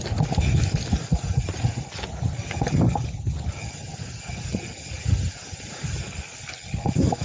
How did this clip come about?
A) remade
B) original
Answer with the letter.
B